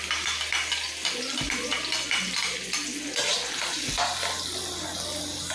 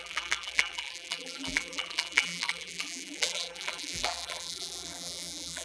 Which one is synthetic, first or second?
second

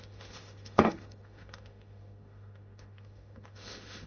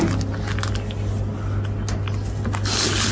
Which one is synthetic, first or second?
first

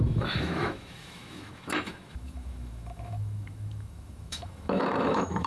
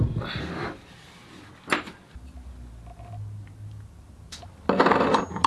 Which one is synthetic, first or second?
first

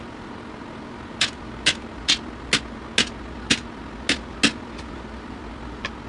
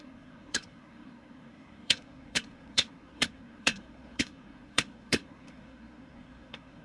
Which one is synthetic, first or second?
second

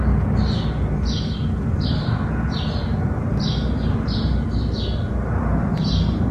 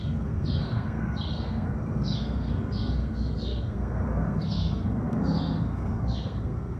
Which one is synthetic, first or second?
second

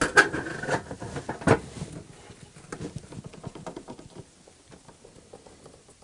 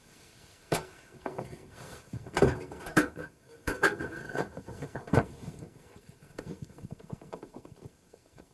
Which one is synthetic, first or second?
second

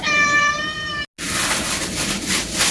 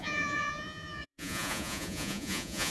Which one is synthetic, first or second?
second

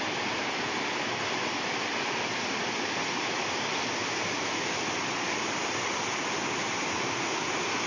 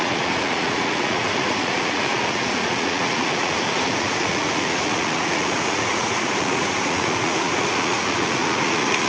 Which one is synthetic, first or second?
second